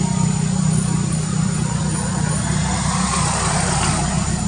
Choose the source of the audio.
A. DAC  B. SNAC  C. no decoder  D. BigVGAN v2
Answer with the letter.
C